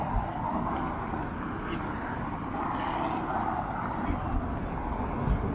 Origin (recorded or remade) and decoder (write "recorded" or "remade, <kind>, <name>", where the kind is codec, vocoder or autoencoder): recorded